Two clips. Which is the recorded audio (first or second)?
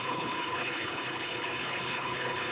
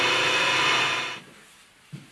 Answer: second